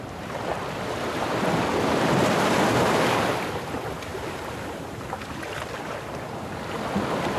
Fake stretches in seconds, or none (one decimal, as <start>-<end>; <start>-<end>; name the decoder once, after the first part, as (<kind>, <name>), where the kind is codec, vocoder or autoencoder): none

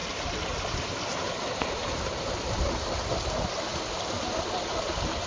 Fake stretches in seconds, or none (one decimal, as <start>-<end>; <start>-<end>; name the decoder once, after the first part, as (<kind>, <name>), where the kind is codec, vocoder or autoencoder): 1.8-2.7 (vocoder, BigVGAN v2)

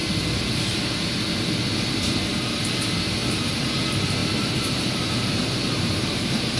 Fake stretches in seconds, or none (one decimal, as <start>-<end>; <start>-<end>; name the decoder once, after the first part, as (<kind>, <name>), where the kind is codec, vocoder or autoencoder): 3.2-3.7 (vocoder, BigVGAN v2); 4.2-6.6

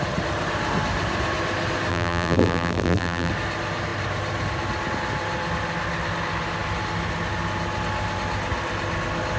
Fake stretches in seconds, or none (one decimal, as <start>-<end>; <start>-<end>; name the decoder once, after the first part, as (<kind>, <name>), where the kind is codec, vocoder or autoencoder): 1.9-3.3 (vocoder, BigVGAN v2)

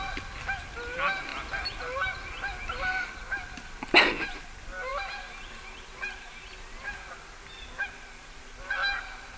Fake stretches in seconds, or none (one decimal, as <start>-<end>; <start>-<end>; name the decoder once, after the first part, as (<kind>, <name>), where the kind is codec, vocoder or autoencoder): none

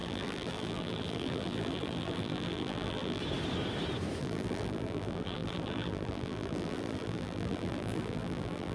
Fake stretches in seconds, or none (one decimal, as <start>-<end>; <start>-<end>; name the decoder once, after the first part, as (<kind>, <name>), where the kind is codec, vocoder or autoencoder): 0.0-3.2 (vocoder, BigVGAN v2); 4.2-8.7

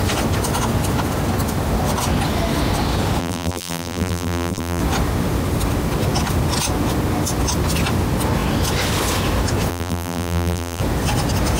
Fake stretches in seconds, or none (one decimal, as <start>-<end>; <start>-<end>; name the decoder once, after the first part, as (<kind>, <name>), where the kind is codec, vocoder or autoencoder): 3.2-4.8 (vocoder, BigVGAN v2); 9.7-10.8

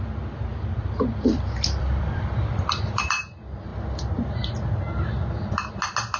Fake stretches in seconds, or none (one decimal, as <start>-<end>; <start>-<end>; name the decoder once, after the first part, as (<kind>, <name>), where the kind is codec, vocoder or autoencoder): 0.5-3.2 (vocoder, BigVGAN v2)